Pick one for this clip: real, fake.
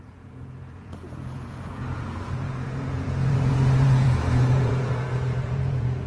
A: fake